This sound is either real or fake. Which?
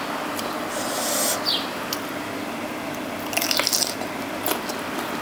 real